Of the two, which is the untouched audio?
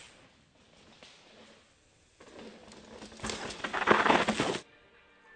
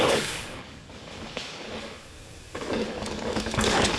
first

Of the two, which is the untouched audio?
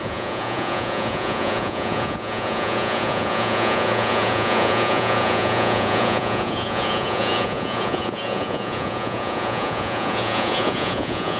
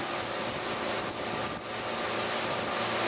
second